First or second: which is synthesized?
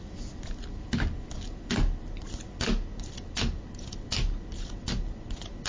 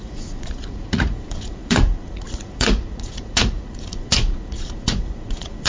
second